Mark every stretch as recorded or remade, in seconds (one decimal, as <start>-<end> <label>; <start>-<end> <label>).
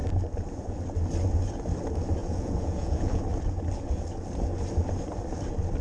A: 0.0-2.2 recorded; 2.2-3.2 remade; 3.2-5.8 recorded